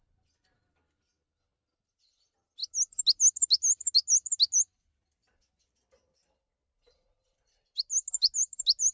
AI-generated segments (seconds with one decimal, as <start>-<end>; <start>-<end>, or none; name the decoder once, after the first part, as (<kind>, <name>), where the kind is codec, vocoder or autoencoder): none